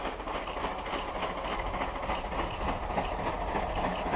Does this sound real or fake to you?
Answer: real